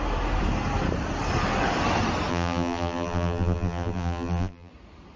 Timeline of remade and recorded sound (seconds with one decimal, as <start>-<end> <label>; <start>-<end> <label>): 0.0-2.3 recorded; 2.3-4.7 remade; 4.7-5.2 recorded